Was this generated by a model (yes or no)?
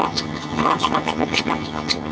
yes